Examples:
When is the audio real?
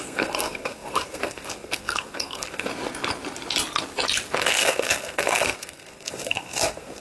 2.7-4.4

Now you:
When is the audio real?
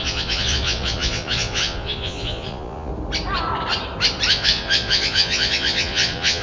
2.9-4.3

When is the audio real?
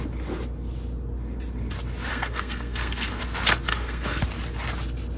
0.0-2.1; 3.2-3.7; 4.2-5.2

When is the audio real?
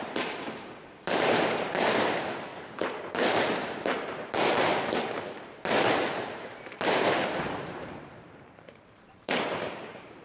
2.5-3.1